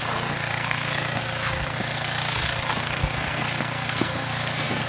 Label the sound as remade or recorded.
remade